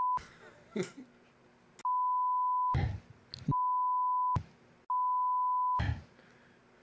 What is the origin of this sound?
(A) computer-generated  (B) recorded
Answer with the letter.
B